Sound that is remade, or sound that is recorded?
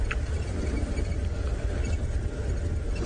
remade